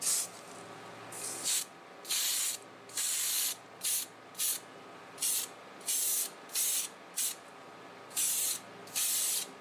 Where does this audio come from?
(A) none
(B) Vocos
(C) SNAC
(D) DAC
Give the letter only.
A